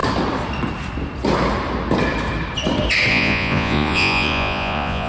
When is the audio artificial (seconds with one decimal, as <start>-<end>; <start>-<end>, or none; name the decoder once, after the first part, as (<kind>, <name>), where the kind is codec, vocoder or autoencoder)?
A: 3.1-5.1 (vocoder, Vocos)